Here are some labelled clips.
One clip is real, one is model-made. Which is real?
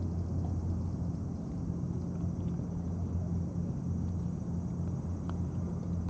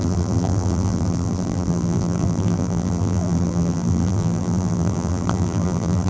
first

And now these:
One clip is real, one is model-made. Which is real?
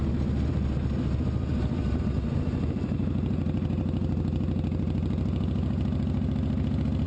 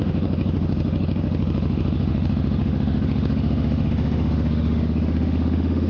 first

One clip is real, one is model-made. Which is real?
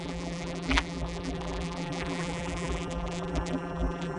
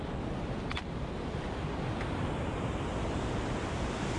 second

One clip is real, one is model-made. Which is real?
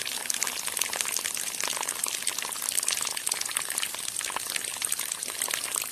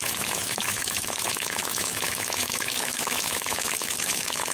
first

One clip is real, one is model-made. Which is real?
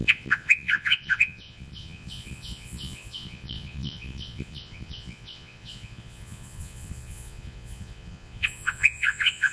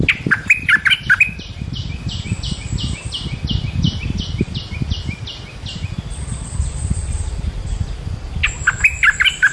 second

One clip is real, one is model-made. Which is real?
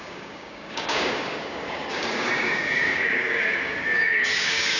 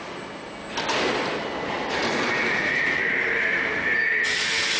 second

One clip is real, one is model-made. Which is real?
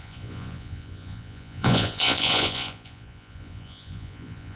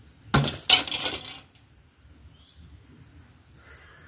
second